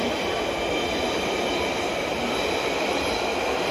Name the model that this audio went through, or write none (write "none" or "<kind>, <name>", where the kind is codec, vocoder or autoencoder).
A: none